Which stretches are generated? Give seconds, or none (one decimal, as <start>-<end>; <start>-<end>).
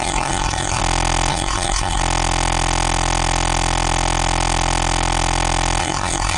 0.0-0.8; 1.3-2.0; 5.8-6.4